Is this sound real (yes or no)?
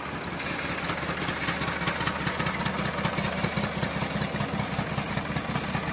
yes